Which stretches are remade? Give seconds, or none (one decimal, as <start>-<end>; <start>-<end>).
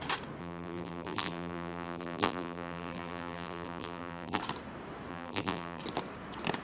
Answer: 0.4-4.4; 5.1-5.8